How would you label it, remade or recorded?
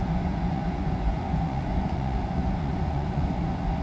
remade